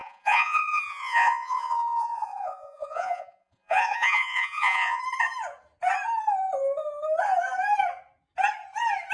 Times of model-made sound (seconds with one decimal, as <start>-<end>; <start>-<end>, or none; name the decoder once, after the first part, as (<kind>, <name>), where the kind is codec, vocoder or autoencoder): 0.0-5.0 (vocoder, Vocos)